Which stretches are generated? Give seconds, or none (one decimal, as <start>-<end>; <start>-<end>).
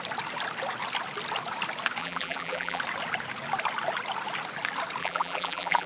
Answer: 2.0-2.8; 5.0-5.9